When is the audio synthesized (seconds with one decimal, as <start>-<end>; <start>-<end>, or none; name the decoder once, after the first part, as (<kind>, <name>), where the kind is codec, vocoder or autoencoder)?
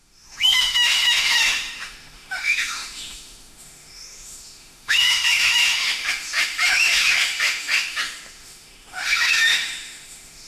0.0-10.5 (autoencoder, DAC-VAE)